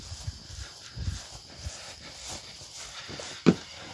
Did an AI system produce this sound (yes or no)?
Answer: no